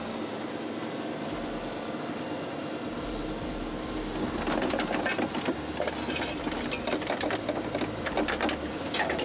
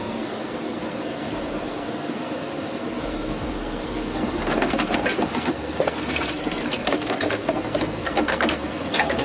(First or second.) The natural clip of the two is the first